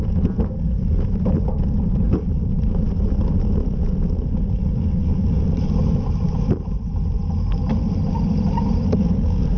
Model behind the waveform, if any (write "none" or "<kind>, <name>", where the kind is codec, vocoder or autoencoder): none